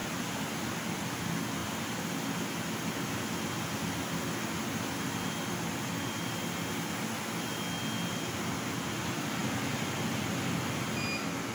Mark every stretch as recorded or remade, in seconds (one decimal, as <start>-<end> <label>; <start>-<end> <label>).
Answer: 0.0-1.0 remade; 1.0-11.5 recorded